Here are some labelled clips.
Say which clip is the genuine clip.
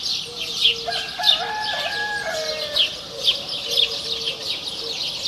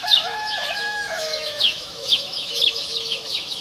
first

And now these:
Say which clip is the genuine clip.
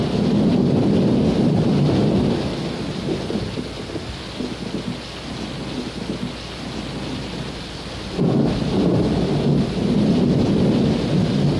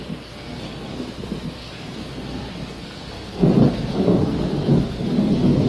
first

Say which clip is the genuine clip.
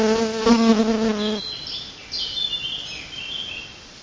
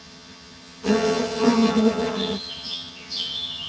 first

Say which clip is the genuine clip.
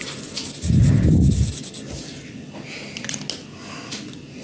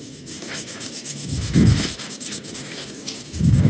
first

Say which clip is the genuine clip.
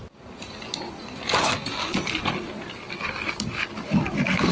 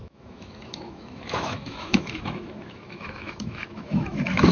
first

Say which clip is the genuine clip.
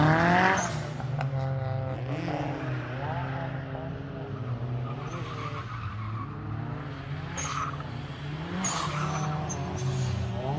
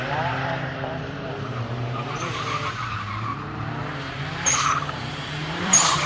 first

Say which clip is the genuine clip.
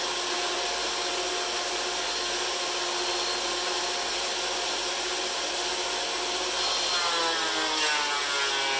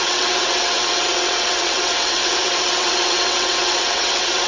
first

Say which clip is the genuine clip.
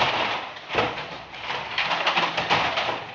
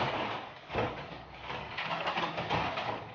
first